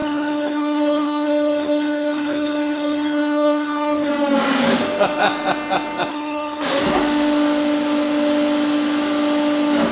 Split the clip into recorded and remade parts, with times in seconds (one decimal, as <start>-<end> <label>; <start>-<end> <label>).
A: 0.0-4.1 remade; 4.1-6.1 recorded; 6.1-6.8 remade; 6.8-9.9 recorded